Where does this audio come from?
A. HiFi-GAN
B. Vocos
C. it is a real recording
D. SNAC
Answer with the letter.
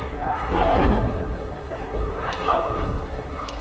D